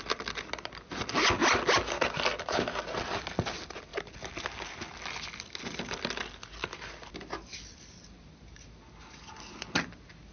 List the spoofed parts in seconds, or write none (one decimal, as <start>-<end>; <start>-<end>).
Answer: none

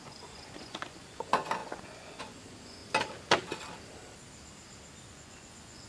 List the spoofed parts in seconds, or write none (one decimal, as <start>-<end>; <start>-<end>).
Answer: 0.0-2.8; 5.1-5.9

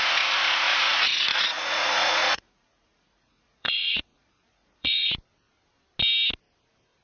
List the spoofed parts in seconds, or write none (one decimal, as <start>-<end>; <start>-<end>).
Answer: 0.9-5.1

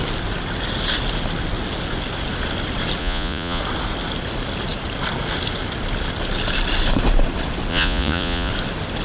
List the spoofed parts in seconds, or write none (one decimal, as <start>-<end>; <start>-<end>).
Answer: 3.0-3.6; 7.7-8.5

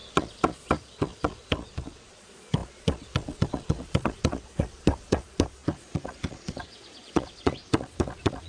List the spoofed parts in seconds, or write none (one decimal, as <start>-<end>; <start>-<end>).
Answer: 0.0-8.5

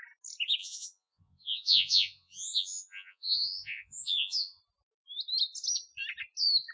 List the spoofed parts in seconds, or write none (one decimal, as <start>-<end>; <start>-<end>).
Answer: 0.6-4.6

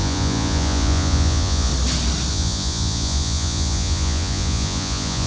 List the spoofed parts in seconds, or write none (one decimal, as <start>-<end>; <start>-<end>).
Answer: 0.0-1.7; 2.3-5.3

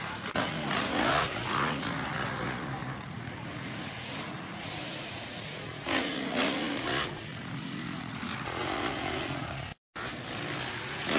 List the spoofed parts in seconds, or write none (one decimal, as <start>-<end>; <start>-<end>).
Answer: 0.0-9.7; 10.7-11.2